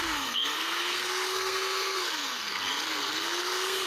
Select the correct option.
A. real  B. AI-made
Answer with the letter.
B